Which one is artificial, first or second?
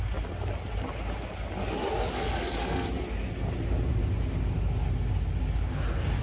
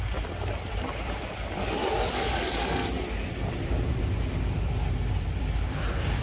second